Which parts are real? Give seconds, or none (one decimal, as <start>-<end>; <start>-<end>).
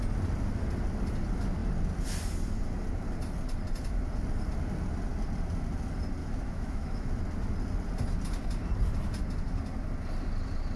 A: 0.0-6.2; 7.1-10.8